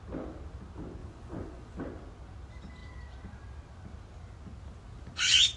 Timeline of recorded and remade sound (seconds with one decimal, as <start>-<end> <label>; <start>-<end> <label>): 0.0-1.0 recorded; 1.0-1.8 remade; 1.8-5.6 recorded

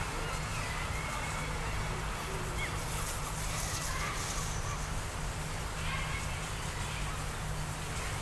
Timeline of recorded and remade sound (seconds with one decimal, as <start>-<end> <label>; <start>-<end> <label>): 0.0-8.2 recorded